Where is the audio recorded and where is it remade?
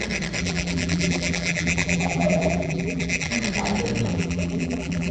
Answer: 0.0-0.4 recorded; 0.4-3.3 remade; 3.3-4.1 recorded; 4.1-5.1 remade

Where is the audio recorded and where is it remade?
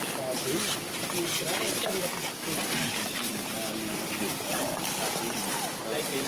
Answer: 0.0-2.1 recorded; 2.1-3.2 remade; 3.2-6.3 recorded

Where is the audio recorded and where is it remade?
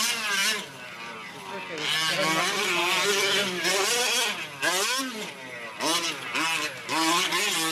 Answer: 0.0-7.7 recorded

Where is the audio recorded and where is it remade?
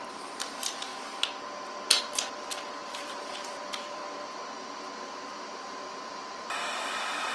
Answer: 0.0-0.9 remade; 0.9-2.0 recorded; 2.0-4.0 remade; 4.0-5.3 recorded; 5.3-7.3 remade